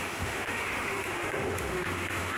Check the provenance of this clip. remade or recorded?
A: remade